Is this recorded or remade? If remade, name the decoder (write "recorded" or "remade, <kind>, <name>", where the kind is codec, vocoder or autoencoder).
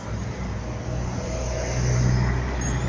recorded